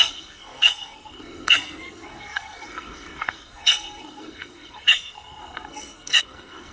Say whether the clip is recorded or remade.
remade